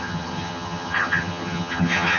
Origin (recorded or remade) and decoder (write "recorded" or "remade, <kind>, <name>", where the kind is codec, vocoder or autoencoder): remade, vocoder, HiFi-GAN